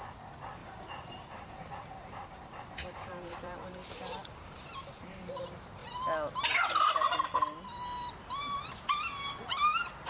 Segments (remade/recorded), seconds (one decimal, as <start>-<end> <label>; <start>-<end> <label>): 0.0-0.6 recorded; 0.6-5.2 remade; 5.2-10.1 recorded